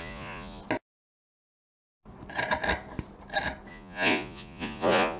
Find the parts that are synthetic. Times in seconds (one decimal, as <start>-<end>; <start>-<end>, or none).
0.0-0.6; 3.7-5.2